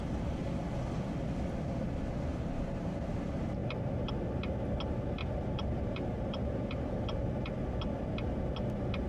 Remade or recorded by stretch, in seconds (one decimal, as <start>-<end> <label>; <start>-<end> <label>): 0.0-2.3 recorded; 2.3-3.0 remade; 3.0-3.6 recorded; 3.6-4.1 remade; 4.1-5.2 recorded; 5.2-7.5 remade; 7.5-9.1 recorded